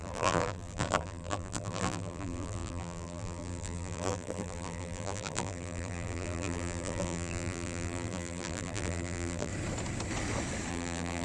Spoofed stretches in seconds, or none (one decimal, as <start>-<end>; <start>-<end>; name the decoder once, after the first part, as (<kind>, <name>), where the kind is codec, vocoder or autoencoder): 0.0-9.5 (vocoder, BigVGAN v2); 10.7-11.2